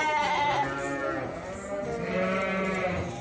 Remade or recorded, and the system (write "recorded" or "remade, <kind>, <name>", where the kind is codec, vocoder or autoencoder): recorded